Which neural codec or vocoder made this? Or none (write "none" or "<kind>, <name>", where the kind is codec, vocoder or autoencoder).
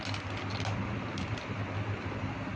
none